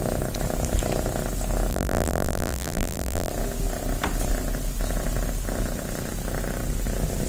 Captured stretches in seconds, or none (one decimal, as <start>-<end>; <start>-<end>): 0.0-1.7; 3.3-7.3